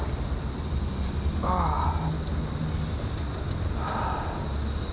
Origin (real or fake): real